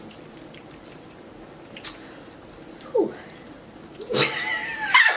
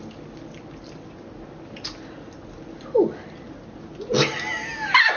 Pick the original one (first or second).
second